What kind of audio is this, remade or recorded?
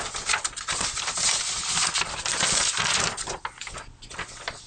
recorded